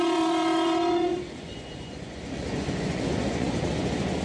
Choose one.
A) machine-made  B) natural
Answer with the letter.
A